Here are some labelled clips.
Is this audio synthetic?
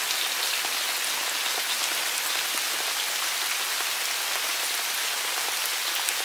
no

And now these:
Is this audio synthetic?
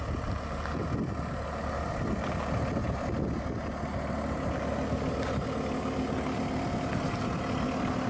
no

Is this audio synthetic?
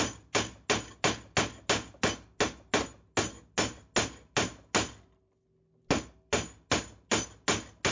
no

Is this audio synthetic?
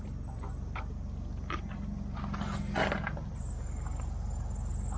no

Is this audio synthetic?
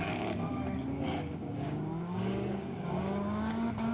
yes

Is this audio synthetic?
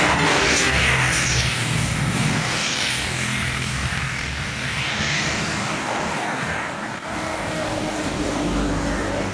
yes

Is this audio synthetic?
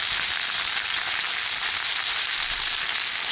no